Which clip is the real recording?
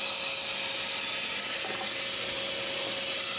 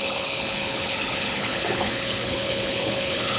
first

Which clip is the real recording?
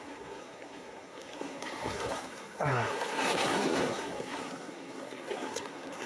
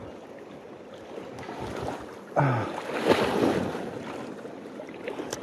second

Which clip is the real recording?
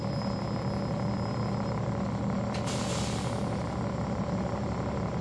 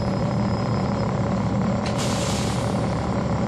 first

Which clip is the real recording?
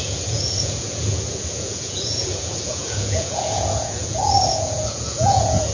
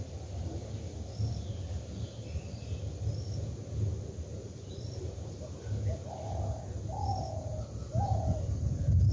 second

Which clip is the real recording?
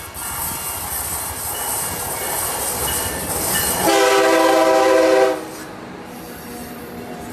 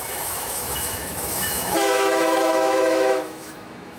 first